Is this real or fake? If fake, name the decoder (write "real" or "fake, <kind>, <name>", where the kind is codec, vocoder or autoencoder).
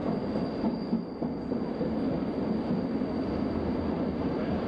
real